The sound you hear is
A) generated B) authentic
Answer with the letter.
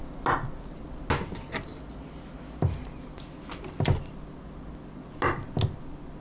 B